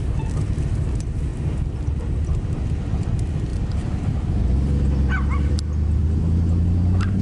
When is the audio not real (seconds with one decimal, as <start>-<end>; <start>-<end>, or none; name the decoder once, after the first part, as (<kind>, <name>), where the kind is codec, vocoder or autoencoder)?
none